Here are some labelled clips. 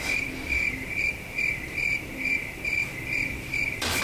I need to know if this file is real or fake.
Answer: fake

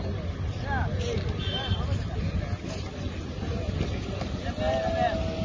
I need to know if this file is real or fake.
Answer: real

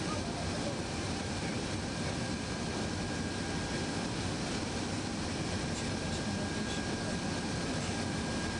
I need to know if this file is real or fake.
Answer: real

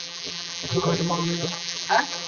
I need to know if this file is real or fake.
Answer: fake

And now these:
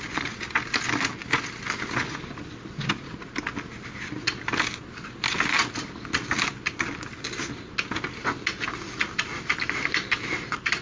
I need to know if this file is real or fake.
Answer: real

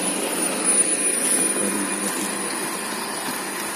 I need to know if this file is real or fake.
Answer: real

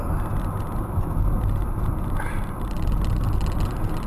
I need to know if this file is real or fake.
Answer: real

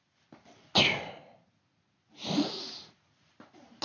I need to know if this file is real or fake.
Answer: real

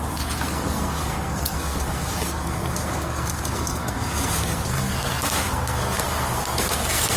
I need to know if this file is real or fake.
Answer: fake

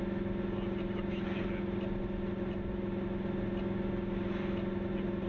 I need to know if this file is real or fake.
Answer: real